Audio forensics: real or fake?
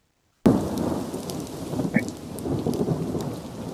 real